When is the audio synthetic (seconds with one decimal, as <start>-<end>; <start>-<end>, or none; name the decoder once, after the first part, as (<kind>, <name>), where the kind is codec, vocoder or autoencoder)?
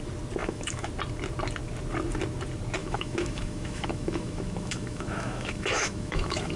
0.4-0.9 (autoencoder, DAC-VAE); 2.8-6.6